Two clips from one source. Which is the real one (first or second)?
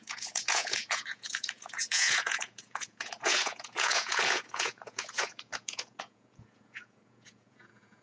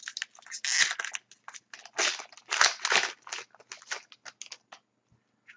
second